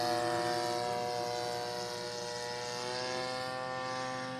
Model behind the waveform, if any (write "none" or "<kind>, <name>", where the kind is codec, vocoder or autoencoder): none